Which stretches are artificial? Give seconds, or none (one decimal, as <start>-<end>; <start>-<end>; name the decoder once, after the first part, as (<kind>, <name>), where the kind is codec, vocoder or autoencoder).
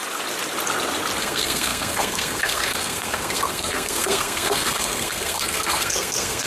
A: 1.2-6.5 (codec, SNAC)